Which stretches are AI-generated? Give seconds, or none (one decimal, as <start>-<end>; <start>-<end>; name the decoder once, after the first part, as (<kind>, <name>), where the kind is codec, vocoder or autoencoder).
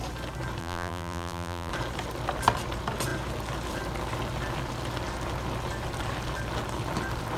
0.6-1.7 (vocoder, BigVGAN v2)